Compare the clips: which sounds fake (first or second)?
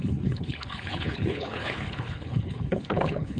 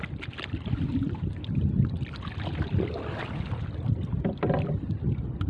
first